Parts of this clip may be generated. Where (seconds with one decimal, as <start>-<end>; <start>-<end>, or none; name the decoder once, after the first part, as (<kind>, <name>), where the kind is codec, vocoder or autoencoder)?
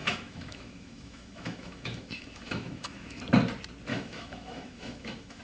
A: 0.0-3.2 (autoencoder, DAC-VAE); 3.9-5.4